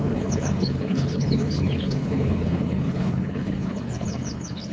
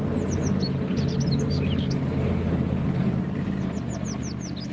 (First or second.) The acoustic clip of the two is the second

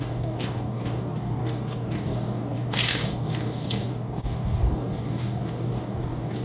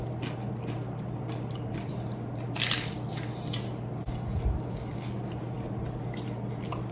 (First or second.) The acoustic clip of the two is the second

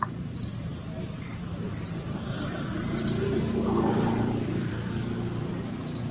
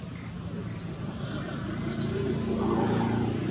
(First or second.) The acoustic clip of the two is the second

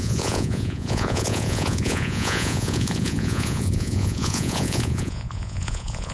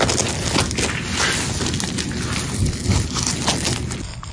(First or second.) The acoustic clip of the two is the second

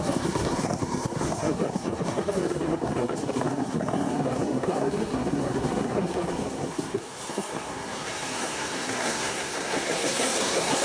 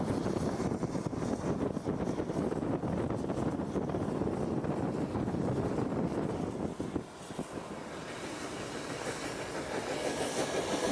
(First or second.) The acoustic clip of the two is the second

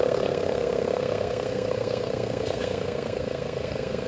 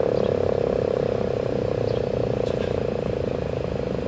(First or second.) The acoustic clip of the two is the second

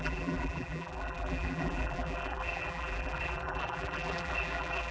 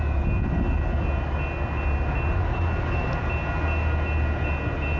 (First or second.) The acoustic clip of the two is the second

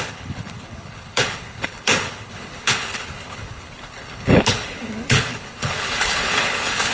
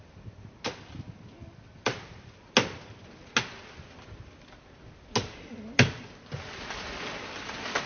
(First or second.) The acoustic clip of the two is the second